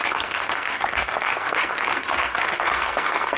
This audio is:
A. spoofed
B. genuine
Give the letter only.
A